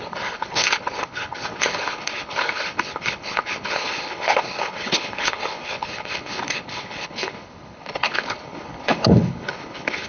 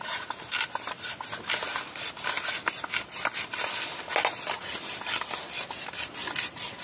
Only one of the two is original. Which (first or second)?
second